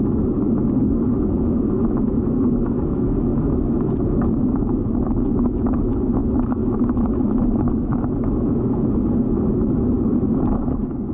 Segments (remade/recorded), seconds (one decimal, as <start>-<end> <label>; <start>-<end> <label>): 0.0-11.1 remade